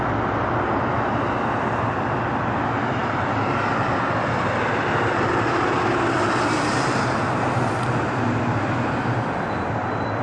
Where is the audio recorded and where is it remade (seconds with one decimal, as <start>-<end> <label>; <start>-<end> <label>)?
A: 0.0-10.2 recorded